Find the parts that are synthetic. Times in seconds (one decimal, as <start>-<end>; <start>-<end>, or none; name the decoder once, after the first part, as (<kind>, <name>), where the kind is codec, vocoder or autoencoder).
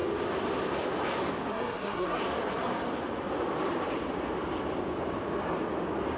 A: 1.5-2.2 (codec, SNAC)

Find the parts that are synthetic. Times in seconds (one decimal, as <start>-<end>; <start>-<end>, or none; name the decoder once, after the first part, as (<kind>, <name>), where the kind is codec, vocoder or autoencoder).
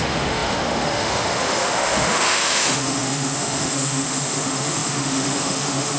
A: 0.0-6.0 (autoencoder, DAC-VAE)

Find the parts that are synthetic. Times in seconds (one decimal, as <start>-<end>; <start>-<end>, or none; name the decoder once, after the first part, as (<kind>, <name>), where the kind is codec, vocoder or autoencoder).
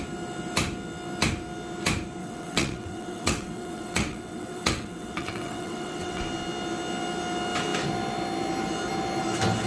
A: 2.2-6.2 (vocoder, WaveNeXt)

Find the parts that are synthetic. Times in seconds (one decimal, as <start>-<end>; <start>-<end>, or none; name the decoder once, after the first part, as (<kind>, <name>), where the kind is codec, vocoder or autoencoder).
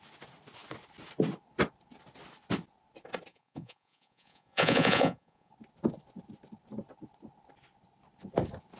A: 3.3-5.5 (vocoder, Vocos)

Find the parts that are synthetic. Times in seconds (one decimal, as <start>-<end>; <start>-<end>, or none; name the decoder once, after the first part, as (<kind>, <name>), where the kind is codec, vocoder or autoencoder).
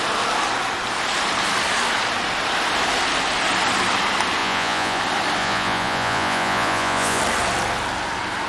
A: 4.4-5.0 (vocoder, Vocos); 5.4-7.2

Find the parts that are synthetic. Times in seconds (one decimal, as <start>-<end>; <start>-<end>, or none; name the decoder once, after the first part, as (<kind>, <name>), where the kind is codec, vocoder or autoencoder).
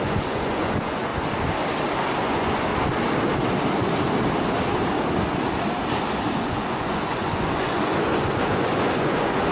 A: 0.0-1.1 (vocoder, Vocos); 2.2-2.7; 6.4-9.5